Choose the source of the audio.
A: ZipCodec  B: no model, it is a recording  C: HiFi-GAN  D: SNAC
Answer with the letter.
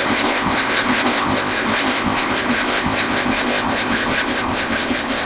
A